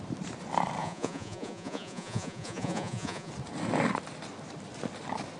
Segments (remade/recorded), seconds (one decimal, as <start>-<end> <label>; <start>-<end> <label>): 0.0-0.8 recorded; 0.8-3.3 remade; 3.3-5.4 recorded